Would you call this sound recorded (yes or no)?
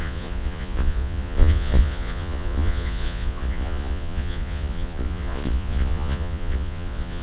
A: no